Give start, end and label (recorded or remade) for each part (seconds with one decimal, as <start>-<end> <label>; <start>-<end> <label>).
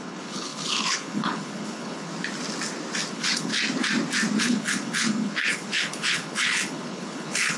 0.0-2.1 remade; 2.1-3.1 recorded; 3.1-3.5 remade; 3.5-4.4 recorded; 4.4-7.6 remade